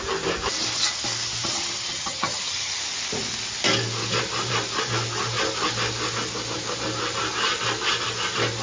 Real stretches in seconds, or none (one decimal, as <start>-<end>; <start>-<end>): 0.0-1.4; 2.8-8.6